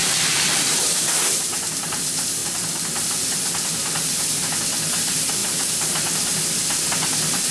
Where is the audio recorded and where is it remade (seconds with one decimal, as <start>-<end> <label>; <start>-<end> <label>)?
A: 0.0-1.7 remade; 1.7-7.5 recorded